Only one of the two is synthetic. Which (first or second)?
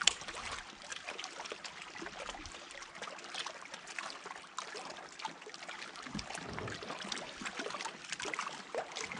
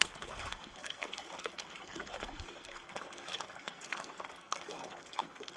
second